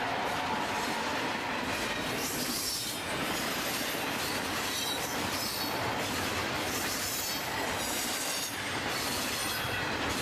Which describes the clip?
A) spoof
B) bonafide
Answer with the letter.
A